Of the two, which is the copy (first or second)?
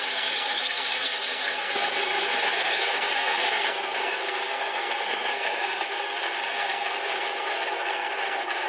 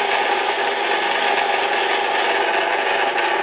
first